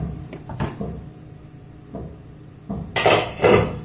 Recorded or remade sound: recorded